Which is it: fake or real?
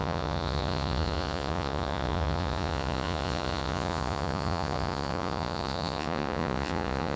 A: fake